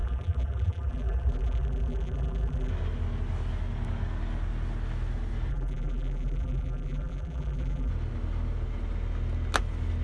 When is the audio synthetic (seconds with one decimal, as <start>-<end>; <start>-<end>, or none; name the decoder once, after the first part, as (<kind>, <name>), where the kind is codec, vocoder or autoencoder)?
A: 0.0-2.7 (vocoder, BigVGAN v2); 5.5-7.9

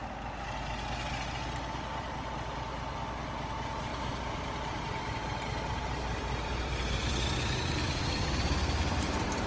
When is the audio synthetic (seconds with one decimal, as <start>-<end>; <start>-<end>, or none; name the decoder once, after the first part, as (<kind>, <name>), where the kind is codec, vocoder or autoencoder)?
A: 3.9-9.5 (vocoder, BigVGAN v2)

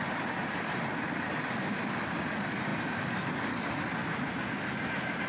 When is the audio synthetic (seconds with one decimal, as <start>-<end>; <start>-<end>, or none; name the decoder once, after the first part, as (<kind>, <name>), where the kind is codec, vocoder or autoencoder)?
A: none

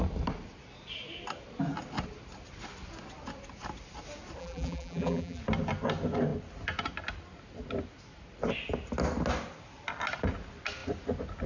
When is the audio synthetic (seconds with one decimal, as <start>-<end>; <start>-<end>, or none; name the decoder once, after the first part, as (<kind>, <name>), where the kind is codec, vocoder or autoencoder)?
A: 4.4-5.4 (vocoder, BigVGAN v2)

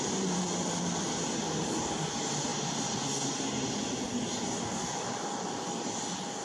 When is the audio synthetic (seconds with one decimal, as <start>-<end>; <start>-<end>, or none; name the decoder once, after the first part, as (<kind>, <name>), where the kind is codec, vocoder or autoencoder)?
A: 0.0-2.5 (vocoder, BigVGAN v2); 4.6-6.4

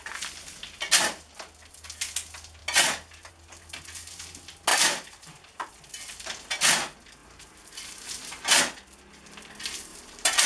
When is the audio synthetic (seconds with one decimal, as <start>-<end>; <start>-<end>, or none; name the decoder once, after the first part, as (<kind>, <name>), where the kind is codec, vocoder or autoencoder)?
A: 4.7-5.7 (vocoder, BigVGAN v2); 7.2-8.6; 9.9-10.5